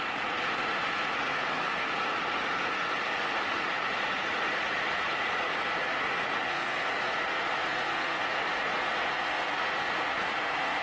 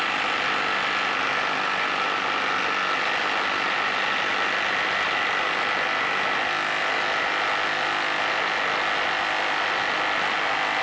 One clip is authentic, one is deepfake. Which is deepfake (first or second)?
first